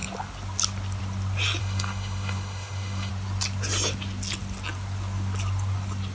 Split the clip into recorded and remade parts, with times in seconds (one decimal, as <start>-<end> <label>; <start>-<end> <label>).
0.0-1.6 recorded; 1.6-3.1 remade; 3.1-6.1 recorded